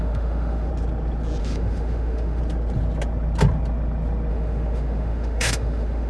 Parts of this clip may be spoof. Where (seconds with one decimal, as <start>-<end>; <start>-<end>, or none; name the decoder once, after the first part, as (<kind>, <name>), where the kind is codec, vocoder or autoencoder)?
0.0-0.7 (autoencoder, DAC-VAE); 1.4-2.4; 4.3-6.1